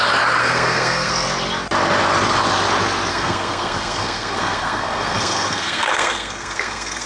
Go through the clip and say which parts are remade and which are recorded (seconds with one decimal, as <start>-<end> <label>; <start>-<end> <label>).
0.0-0.4 recorded; 0.4-1.1 remade; 1.1-3.1 recorded; 3.1-7.1 remade